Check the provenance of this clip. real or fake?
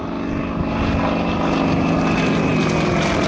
real